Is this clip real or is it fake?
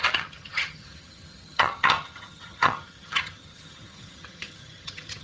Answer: fake